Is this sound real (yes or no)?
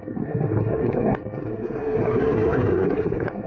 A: no